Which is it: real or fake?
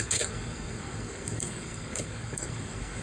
fake